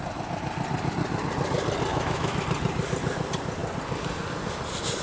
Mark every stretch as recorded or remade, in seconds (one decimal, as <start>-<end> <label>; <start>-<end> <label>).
0.0-1.9 recorded; 1.9-2.4 remade; 2.4-5.0 recorded